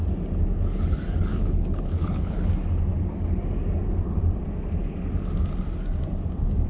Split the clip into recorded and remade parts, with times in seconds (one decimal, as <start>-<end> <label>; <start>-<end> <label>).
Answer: 0.0-1.3 recorded; 1.3-2.5 remade; 2.5-6.7 recorded